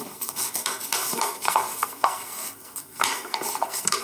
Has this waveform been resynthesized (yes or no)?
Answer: yes